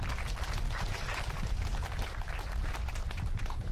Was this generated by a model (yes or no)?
no